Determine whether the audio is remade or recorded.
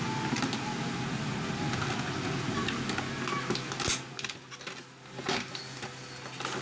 recorded